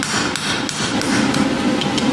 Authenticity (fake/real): real